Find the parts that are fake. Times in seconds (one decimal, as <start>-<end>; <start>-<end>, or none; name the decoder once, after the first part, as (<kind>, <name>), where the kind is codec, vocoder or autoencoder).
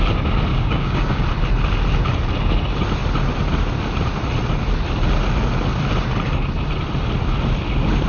0.5-1.2 (codec, DAC)